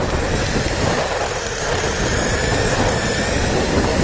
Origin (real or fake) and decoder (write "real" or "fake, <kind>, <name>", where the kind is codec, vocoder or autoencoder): real